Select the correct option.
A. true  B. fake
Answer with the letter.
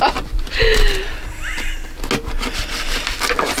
A